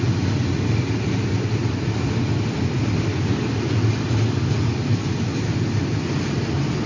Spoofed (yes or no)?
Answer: no